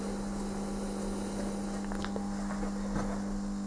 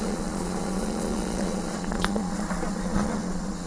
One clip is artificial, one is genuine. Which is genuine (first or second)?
first